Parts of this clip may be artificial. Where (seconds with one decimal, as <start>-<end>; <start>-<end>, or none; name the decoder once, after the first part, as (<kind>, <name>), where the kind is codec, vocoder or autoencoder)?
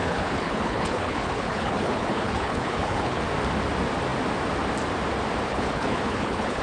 0.0-3.2 (codec, HILCodec); 5.5-6.6